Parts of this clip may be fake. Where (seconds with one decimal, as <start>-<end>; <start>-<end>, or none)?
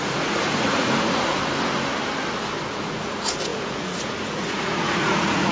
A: 0.0-1.4; 2.7-5.5